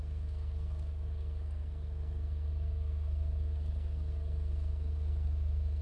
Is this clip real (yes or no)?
no